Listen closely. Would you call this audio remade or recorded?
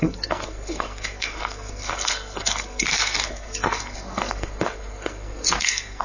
remade